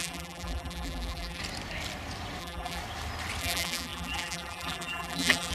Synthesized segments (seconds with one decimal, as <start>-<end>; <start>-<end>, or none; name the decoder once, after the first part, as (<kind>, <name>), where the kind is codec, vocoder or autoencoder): 0.0-1.4 (vocoder, BigVGAN v2); 2.4-2.8; 3.4-5.5